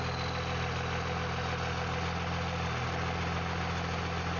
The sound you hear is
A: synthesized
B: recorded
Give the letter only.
B